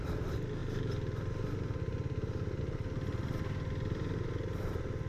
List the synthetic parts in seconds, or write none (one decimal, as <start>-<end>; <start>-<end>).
none